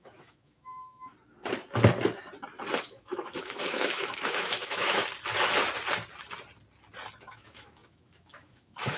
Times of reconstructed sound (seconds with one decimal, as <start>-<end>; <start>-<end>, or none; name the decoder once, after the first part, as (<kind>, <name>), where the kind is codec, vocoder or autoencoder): 0.0-1.1 (autoencoder, DAC-VAE); 2.8-5.0; 7.2-9.0